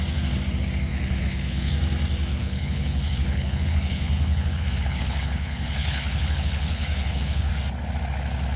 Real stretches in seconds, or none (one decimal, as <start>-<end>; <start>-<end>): 0.0-0.9; 1.7-2.3; 7.5-8.6